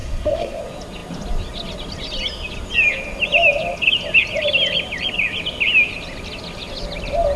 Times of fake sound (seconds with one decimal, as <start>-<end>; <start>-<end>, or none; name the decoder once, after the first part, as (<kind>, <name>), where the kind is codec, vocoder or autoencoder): 0.0-0.6 (codec, SNAC)